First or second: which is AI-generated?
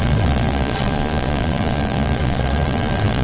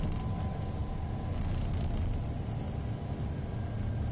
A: first